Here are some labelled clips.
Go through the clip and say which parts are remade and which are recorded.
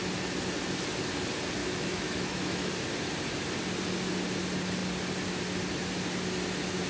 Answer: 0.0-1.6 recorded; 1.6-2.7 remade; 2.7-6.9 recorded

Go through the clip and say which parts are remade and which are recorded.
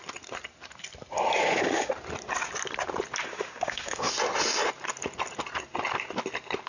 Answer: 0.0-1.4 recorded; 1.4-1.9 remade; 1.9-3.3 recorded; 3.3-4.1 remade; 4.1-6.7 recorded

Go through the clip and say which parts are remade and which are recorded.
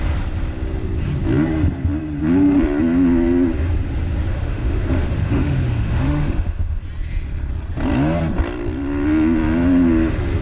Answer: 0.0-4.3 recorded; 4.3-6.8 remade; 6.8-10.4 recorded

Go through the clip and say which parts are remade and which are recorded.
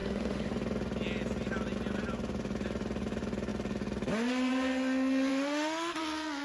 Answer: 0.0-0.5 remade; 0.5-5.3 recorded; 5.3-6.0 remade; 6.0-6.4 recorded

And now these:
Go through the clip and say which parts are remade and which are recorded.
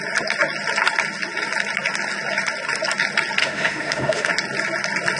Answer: 0.0-3.4 recorded; 3.4-4.3 remade; 4.3-5.2 recorded